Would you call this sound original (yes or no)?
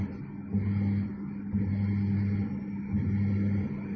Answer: yes